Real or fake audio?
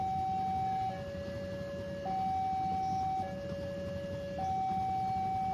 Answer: real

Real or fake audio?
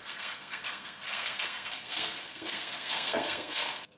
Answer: fake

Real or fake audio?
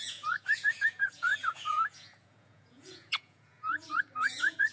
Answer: fake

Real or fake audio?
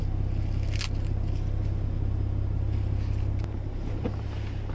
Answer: real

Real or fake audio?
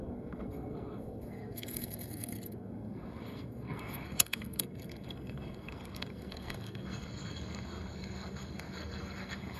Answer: fake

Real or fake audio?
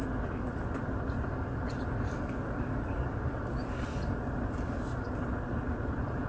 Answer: real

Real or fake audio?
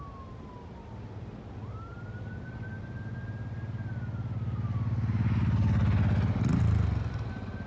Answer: real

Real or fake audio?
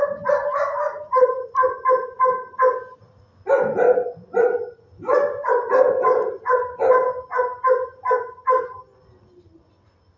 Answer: real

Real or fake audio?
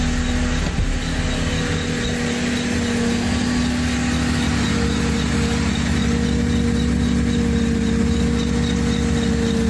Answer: real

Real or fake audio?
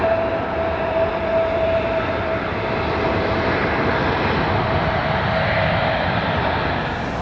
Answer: real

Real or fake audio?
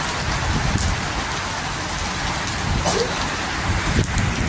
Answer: real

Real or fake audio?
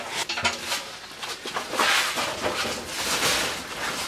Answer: real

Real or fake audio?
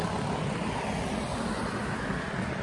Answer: real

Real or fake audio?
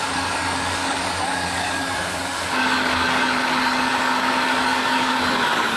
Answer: fake